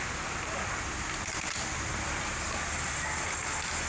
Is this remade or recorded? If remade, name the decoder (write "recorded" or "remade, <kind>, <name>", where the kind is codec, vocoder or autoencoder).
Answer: recorded